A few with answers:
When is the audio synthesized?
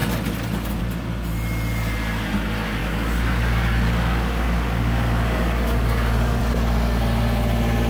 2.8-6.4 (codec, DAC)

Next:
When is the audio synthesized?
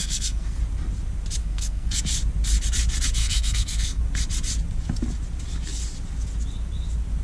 0.0-0.6 (codec, SNAC); 1.4-2.0; 3.2-4.0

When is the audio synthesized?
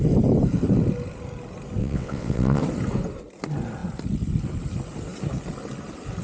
1.8-2.6 (vocoder, WaveNeXt)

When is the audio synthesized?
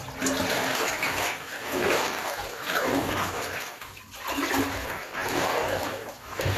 0.5-4.0 (codec, DAC); 4.7-6.6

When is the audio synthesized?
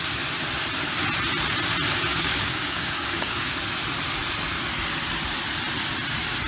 2.1-3.6 (codec, DAC)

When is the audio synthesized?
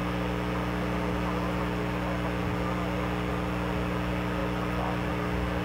none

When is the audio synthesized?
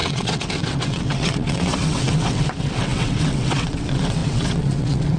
0.0-5.2 (vocoder, WaveNeXt)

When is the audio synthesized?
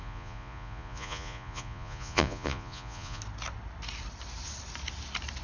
0.0-3.2 (vocoder, Vocos)